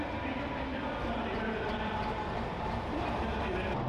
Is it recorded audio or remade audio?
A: recorded